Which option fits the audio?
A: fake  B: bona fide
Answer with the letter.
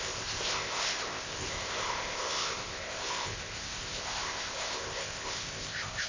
A